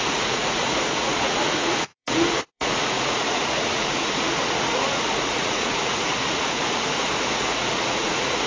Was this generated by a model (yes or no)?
yes